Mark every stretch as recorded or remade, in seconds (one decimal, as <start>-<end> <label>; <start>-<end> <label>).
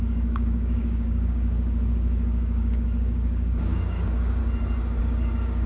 0.0-4.4 remade; 4.4-5.0 recorded; 5.0-5.7 remade